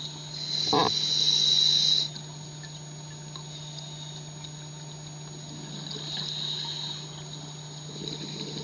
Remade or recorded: recorded